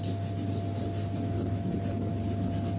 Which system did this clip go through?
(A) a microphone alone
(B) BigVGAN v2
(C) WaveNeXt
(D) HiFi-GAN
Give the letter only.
A